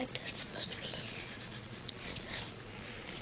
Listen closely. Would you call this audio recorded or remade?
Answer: remade